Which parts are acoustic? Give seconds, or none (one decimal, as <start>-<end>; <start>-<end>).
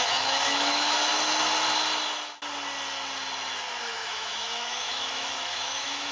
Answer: 1.1-3.8